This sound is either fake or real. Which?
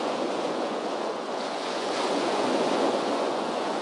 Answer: fake